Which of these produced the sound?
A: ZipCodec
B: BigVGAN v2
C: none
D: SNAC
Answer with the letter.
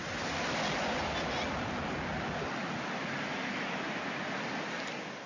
C